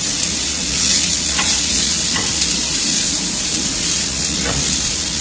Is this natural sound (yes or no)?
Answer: no